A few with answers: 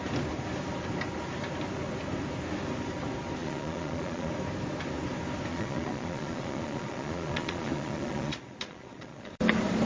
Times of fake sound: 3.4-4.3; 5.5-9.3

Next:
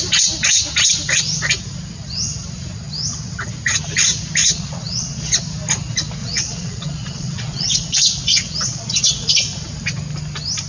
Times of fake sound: 4.4-5.4; 6.2-9.3

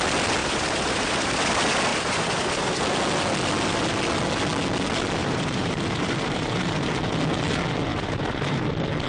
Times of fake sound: 0.4-1.4; 1.9-2.8; 5.2-7.2; 7.9-8.6

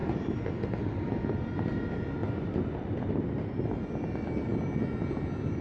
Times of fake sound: none